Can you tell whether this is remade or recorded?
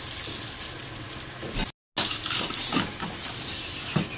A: recorded